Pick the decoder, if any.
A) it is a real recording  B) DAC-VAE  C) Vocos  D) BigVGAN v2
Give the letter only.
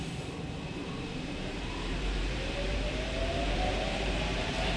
D